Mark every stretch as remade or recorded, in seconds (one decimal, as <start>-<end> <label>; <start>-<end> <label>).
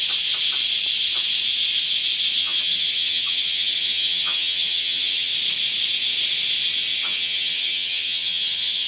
0.0-2.4 recorded; 2.4-5.3 remade; 5.3-7.0 recorded; 7.0-8.9 remade